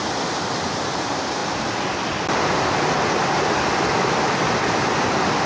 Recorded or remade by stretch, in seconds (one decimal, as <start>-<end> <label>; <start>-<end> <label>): 0.0-5.5 recorded